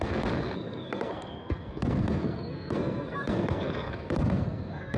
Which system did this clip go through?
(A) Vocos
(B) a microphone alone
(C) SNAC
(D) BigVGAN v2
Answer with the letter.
C